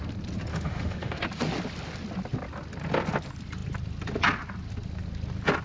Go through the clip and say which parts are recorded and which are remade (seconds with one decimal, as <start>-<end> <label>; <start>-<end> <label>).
0.0-0.5 recorded; 0.5-1.2 remade; 1.2-5.6 recorded